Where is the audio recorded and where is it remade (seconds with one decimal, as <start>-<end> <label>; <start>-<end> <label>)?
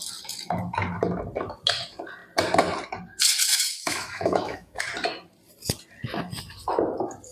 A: 0.0-3.5 recorded; 3.5-4.8 remade; 4.8-7.3 recorded